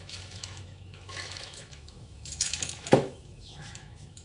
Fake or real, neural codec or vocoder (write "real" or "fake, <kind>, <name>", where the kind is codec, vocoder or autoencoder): fake, autoencoder, DAC-VAE